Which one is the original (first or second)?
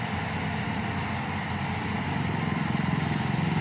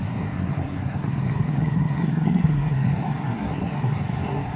first